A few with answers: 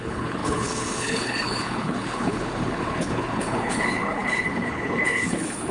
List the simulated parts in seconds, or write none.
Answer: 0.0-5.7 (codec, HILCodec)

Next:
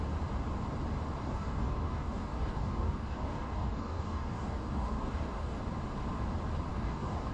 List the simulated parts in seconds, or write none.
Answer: 1.2-5.6 (codec, DAC); 6.7-7.3

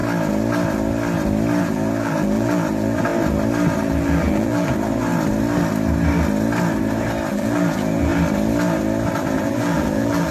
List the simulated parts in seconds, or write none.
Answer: 1.6-3.1 (vocoder, BigVGAN v2); 3.8-4.7; 7.3-8.1; 9.2-10.3

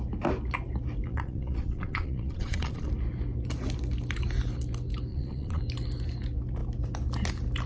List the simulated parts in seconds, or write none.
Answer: 1.1-2.9 (vocoder, Vocos); 5.1-5.6

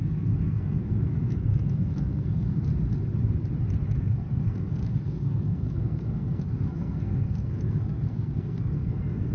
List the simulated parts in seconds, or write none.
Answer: 0.0-2.7 (codec, SNAC); 3.9-9.3

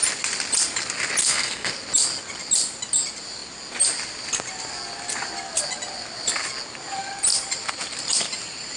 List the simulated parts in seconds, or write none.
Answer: 1.2-1.7 (codec, SNAC)

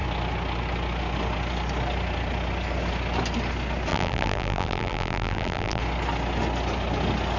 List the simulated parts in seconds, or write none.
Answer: 3.9-5.8 (vocoder, BigVGAN v2)

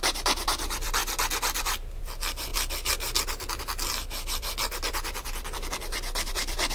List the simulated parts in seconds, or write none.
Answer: 0.0-1.0 (vocoder, BigVGAN v2); 1.6-6.7